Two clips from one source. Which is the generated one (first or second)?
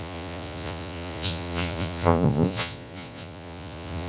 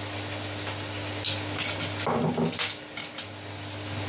first